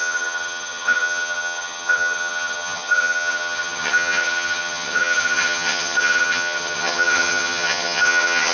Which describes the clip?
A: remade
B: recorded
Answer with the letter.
A